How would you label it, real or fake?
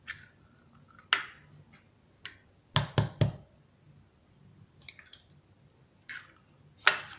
real